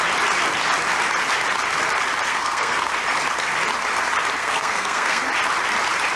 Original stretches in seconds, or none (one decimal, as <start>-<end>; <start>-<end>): 0.0-2.3; 2.9-4.4; 5.2-6.2